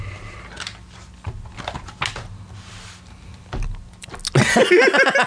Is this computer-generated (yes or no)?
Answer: no